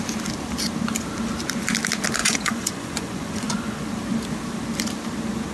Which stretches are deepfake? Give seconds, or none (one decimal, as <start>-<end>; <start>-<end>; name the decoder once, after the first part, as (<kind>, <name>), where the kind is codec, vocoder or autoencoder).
2.2-3.9 (vocoder, Vocos)